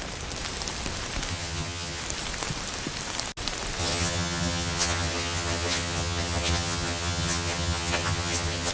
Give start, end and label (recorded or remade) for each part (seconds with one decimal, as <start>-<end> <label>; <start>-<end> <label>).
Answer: 0.0-1.3 recorded; 1.3-2.0 remade; 2.0-3.8 recorded; 3.8-8.7 remade